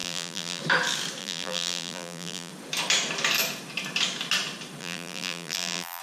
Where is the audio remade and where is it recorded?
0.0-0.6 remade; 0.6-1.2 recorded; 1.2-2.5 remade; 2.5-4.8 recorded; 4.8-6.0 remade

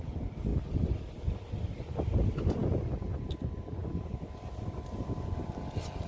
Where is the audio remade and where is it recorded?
0.0-6.1 recorded

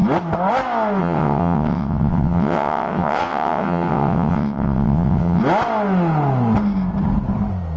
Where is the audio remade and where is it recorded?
0.0-1.0 recorded; 1.0-5.4 remade; 5.4-7.8 recorded

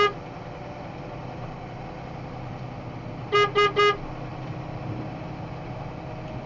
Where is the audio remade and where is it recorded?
0.0-6.5 recorded